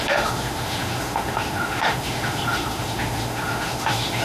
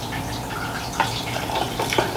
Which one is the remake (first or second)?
first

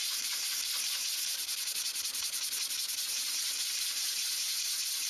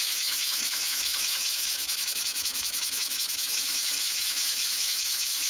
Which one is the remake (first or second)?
second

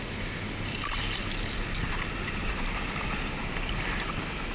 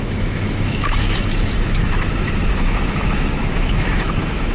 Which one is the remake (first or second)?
second